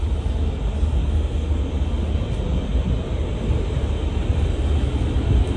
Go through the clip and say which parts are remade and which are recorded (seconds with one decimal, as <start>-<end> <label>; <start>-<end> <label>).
0.0-1.0 recorded; 1.0-1.7 remade; 1.7-5.6 recorded